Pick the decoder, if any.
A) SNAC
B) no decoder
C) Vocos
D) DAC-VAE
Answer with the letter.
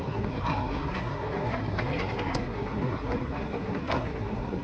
A